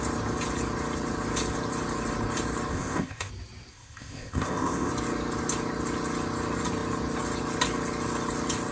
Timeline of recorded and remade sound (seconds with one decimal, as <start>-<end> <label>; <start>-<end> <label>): 0.0-2.7 recorded; 2.7-3.3 remade; 3.3-3.7 recorded; 3.7-4.9 remade; 4.9-8.7 recorded